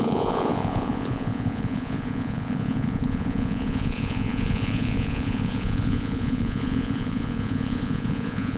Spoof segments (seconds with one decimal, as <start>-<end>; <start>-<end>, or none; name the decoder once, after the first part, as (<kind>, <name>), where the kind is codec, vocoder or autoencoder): 0.0-8.6 (vocoder, Vocos)